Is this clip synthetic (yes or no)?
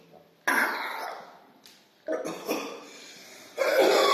no